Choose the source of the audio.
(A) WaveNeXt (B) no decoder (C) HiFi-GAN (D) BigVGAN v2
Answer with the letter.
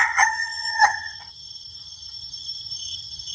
C